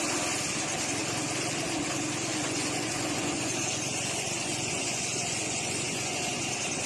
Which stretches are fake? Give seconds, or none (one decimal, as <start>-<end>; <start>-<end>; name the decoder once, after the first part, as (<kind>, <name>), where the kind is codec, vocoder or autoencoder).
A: 2.3-6.4 (vocoder, Vocos)